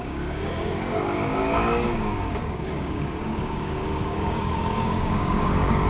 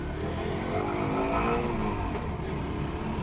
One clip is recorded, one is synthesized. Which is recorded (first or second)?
second